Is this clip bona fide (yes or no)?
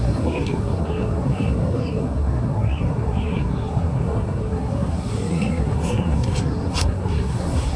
no